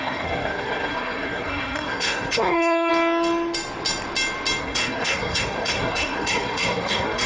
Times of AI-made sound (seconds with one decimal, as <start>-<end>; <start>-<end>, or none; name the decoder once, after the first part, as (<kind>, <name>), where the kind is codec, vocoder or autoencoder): 0.0-2.9 (codec, SNAC); 4.6-7.3